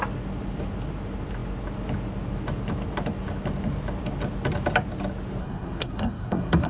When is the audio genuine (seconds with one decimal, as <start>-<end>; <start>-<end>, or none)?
0.0-5.4